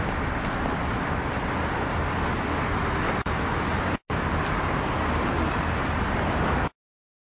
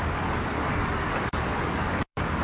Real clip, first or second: first